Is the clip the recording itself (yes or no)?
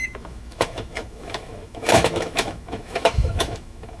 no